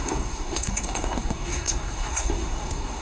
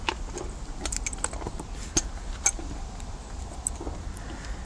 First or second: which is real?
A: second